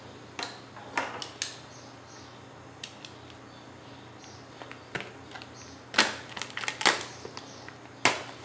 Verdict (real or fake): real